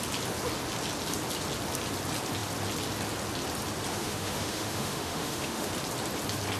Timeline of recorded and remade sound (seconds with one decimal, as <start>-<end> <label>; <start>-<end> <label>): 0.0-3.9 recorded; 3.9-5.7 remade; 5.7-6.6 recorded